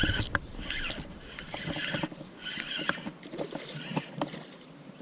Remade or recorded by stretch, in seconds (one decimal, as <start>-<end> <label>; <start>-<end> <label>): 0.0-1.8 remade; 1.8-3.5 recorded; 3.5-5.0 remade